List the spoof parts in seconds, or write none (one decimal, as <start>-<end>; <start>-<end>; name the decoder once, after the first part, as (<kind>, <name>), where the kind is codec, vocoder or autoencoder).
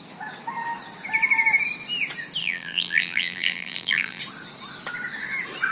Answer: 2.4-4.2 (vocoder, BigVGAN v2)